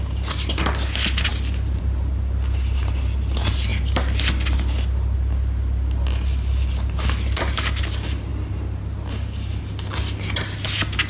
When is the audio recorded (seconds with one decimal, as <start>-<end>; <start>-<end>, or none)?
0.0-11.1